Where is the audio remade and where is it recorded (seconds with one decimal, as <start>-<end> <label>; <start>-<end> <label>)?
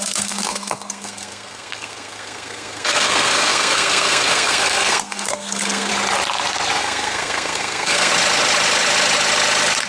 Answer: 0.0-5.9 remade; 5.9-6.8 recorded; 6.8-8.1 remade; 8.1-9.9 recorded